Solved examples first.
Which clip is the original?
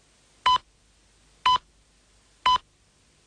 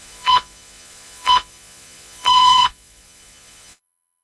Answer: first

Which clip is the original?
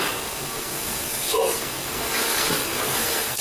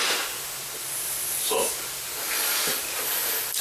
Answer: second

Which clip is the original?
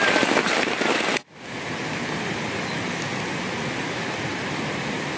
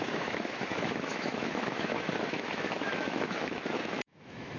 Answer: first